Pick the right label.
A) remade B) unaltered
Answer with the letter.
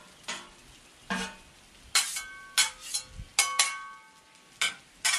B